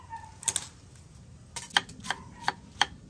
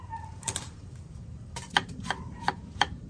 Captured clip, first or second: first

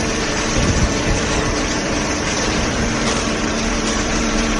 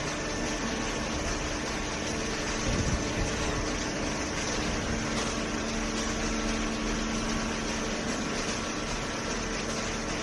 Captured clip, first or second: second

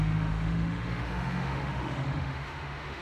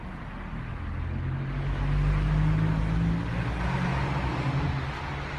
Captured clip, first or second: second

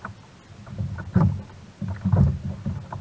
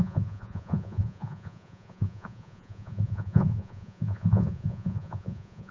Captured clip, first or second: first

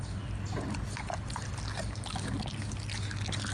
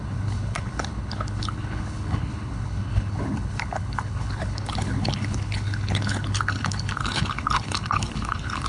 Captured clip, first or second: first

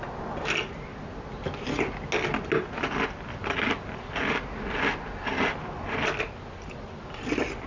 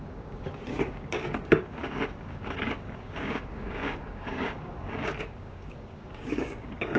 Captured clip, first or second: first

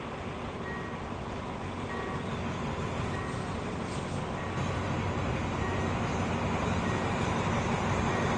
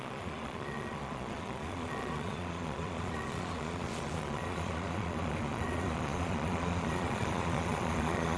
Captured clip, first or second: first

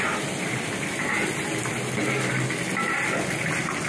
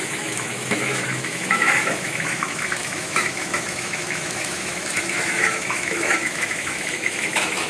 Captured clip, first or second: first